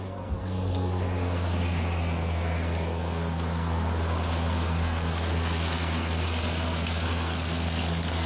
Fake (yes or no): yes